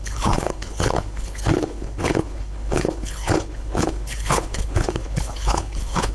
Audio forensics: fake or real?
fake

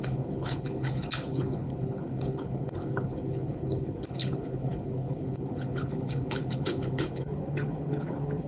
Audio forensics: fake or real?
fake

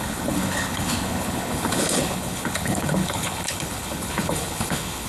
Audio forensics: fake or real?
fake